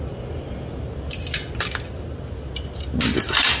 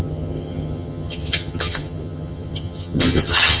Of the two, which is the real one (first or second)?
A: first